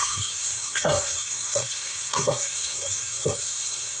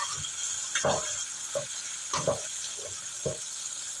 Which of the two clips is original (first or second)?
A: second